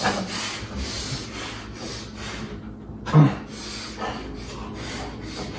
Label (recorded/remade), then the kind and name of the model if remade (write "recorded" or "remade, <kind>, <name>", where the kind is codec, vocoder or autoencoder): recorded